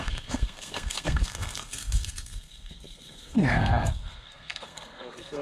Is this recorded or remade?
remade